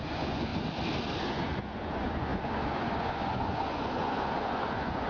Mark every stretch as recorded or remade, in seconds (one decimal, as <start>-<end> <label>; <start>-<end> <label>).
0.0-0.5 remade; 0.5-1.2 recorded; 1.2-5.1 remade